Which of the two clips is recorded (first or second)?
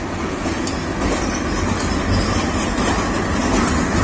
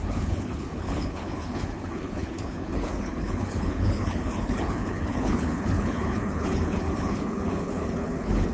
first